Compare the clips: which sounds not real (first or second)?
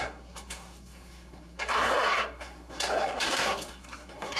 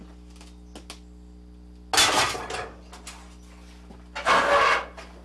first